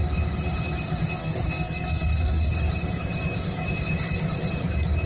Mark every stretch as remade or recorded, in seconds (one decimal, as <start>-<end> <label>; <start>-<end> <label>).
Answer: 0.0-1.2 recorded; 1.2-2.5 remade; 2.5-5.1 recorded